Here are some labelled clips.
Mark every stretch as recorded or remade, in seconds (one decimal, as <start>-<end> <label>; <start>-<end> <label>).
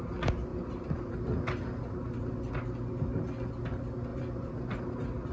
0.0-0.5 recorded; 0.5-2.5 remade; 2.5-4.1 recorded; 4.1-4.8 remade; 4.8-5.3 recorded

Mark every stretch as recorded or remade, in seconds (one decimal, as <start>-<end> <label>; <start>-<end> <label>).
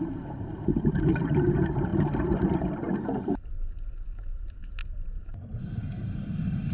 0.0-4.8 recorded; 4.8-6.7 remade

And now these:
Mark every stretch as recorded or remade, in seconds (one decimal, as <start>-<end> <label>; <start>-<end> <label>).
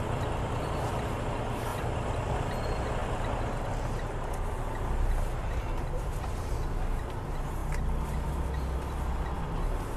0.0-1.7 recorded; 1.7-2.5 remade; 2.5-3.0 recorded; 3.0-3.7 remade; 3.7-10.0 recorded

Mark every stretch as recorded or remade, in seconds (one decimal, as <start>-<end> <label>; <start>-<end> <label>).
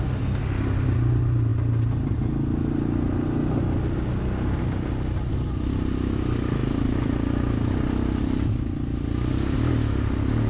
0.0-10.5 recorded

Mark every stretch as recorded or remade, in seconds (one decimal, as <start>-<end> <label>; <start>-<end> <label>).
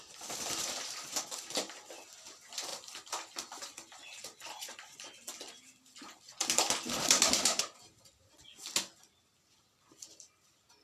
0.0-10.8 recorded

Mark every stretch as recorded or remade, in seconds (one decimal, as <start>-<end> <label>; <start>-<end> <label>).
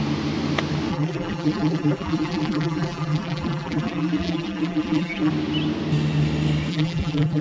0.0-0.9 recorded; 0.9-5.3 remade; 5.3-6.7 recorded; 6.7-7.4 remade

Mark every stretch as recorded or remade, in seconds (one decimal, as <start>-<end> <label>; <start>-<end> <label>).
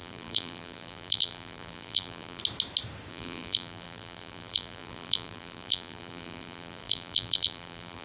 0.0-2.4 remade; 2.4-3.1 recorded; 3.1-8.0 remade